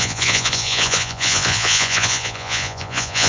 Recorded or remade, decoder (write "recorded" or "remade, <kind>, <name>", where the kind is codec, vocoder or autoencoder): remade, vocoder, Vocos